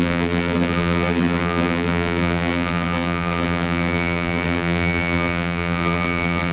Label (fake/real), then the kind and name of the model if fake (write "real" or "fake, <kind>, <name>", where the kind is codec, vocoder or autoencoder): fake, vocoder, BigVGAN v2